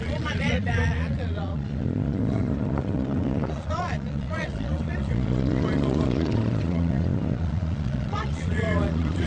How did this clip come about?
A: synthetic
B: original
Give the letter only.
A